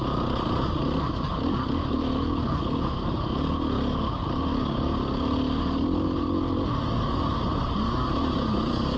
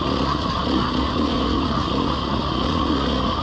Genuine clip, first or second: first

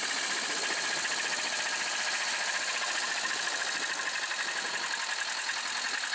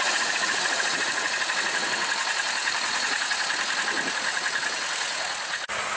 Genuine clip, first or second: first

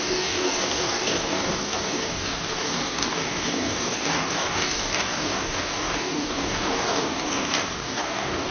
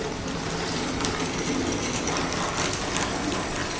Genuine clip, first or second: second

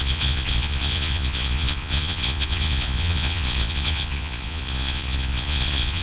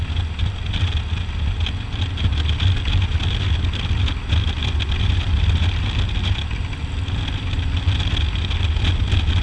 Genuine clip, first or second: second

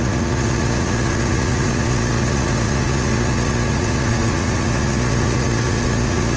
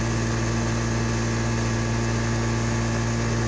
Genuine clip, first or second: second